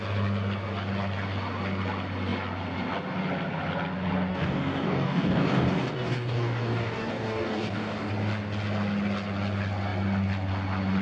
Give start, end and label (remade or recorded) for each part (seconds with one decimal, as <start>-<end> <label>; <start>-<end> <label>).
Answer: 0.0-4.3 recorded; 4.3-8.1 remade; 8.1-11.0 recorded